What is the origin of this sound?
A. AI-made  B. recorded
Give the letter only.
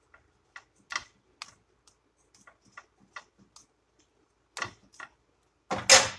B